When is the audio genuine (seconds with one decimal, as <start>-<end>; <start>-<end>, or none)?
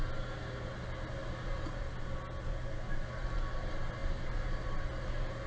0.0-5.5